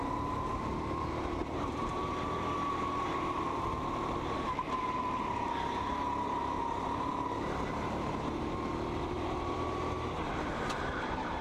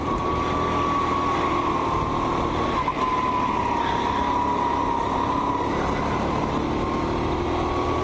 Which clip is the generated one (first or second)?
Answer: first